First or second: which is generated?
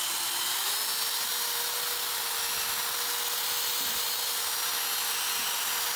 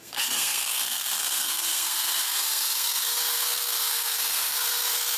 second